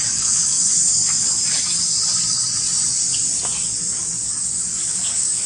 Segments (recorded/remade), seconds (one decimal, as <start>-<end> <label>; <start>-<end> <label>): 0.0-0.7 remade; 0.7-4.0 recorded; 4.0-5.5 remade